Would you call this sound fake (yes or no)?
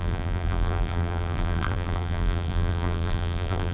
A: yes